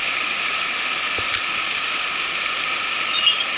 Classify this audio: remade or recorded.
recorded